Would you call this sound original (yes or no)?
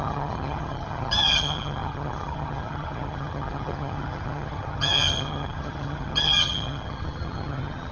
no